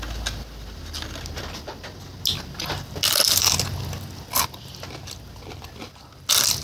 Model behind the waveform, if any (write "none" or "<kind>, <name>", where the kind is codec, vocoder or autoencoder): none